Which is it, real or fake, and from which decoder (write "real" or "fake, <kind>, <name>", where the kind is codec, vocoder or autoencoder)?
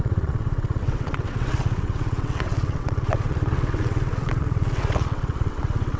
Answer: fake, vocoder, WaveNeXt